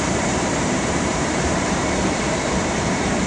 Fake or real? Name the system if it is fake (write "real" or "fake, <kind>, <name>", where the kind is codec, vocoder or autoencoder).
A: fake, vocoder, BigVGAN v2